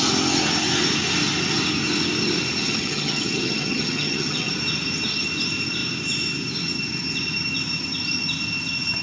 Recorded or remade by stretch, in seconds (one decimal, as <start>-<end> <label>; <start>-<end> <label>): 0.0-2.6 recorded; 2.6-4.5 remade; 4.5-9.0 recorded